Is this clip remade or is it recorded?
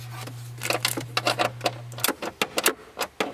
recorded